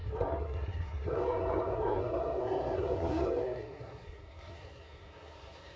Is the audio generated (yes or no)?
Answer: yes